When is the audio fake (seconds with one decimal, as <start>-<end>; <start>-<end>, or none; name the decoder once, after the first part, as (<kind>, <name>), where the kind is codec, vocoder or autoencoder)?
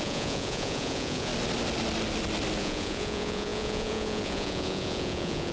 0.0-1.3 (vocoder, Vocos); 2.6-5.5